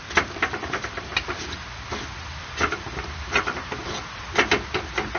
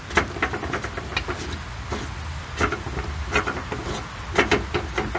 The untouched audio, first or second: second